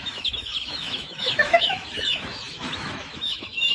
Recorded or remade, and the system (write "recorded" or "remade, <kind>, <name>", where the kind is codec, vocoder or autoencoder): remade, autoencoder, DAC-VAE